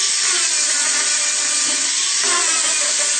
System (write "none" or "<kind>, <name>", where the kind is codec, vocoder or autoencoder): none